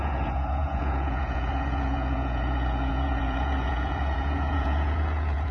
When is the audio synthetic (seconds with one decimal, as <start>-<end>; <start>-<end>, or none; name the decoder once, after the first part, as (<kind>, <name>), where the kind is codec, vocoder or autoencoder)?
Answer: 0.0-5.5 (vocoder, Vocos)